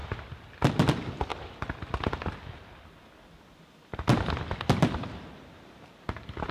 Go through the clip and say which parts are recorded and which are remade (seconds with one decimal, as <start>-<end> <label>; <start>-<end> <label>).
0.0-6.5 recorded

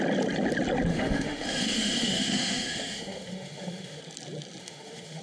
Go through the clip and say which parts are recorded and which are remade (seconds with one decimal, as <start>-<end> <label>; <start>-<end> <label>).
0.0-0.9 recorded; 0.9-4.0 remade; 4.0-4.6 recorded; 4.6-5.2 remade

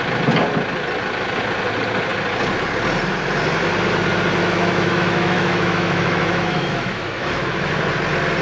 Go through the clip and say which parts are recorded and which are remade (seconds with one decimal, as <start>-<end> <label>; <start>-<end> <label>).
0.0-4.4 recorded; 4.4-7.8 remade; 7.8-8.4 recorded

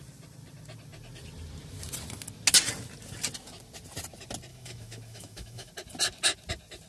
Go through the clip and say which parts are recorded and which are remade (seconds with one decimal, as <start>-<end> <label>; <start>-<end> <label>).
0.0-4.5 recorded; 4.5-5.7 remade; 5.7-6.9 recorded

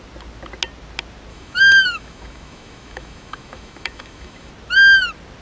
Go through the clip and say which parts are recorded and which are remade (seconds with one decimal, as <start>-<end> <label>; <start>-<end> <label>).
0.0-1.3 recorded; 1.3-4.5 remade; 4.5-5.4 recorded